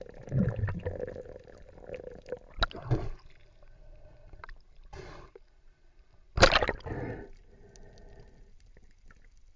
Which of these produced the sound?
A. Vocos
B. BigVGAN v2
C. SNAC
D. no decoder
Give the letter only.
D